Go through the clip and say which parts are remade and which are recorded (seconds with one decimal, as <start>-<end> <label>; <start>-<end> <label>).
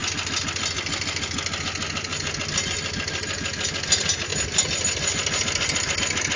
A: 0.0-6.4 recorded